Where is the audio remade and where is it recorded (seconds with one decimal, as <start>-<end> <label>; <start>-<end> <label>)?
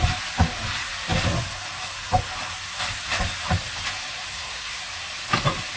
0.0-4.3 recorded; 4.3-4.8 remade; 4.8-5.8 recorded